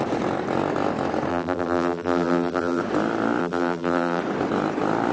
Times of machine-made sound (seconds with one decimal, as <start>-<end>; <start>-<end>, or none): 1.3-2.8; 3.4-4.2